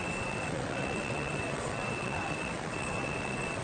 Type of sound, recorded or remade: remade